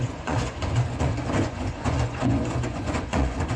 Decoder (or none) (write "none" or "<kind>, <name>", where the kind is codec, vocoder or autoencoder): vocoder, Vocos